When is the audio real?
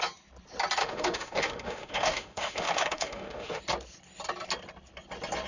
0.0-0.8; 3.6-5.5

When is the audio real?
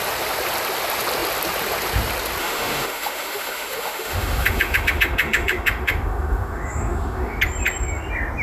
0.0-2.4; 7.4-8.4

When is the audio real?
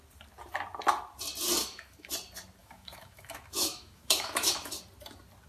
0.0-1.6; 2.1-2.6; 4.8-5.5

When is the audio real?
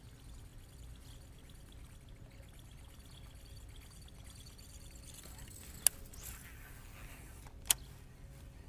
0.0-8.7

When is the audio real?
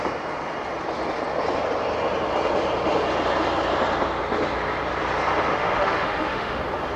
0.0-5.5; 6.6-7.0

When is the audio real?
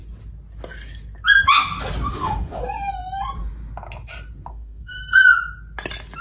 0.0-2.1; 2.6-4.5; 5.0-6.2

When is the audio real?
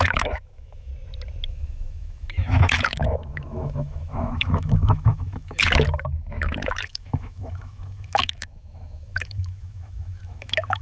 0.9-1.5